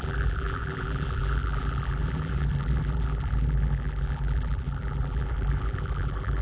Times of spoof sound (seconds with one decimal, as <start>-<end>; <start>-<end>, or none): 0.0-6.4